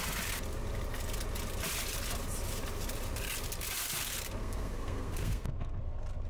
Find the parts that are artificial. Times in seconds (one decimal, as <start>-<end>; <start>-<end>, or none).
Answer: 4.4-5.8

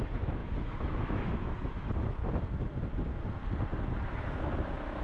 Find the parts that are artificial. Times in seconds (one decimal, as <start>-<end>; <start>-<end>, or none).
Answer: 0.0-2.2; 4.2-5.0

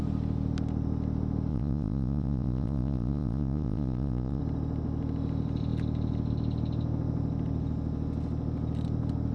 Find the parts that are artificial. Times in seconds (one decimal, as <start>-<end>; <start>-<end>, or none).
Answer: 1.5-4.4

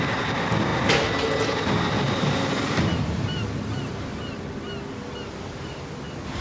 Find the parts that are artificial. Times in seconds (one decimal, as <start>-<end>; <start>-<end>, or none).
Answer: none

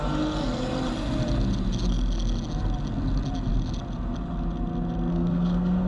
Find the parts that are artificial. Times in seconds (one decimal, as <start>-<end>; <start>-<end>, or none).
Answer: 5.1-5.9